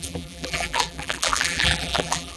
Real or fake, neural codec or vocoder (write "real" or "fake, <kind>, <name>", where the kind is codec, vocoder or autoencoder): fake, vocoder, BigVGAN v2